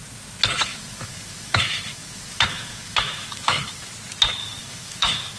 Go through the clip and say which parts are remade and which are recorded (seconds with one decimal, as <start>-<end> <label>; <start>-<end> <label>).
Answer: 0.0-0.7 recorded; 0.7-3.9 remade; 3.9-4.4 recorded; 4.4-5.4 remade